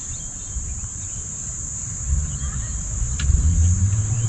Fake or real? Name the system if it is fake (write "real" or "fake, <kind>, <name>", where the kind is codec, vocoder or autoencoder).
fake, vocoder, BigVGAN v2